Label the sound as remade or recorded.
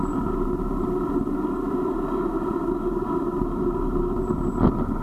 recorded